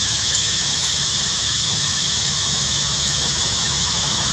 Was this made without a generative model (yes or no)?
no